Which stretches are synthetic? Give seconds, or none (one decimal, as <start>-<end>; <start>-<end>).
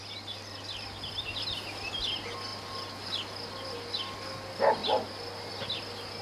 none